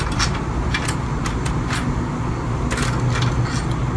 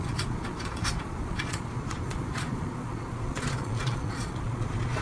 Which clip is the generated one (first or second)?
second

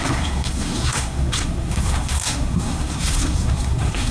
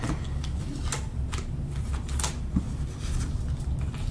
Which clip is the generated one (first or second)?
first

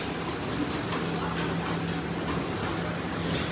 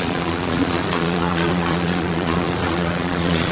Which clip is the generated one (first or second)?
second